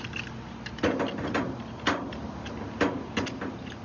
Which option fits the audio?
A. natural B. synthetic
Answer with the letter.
A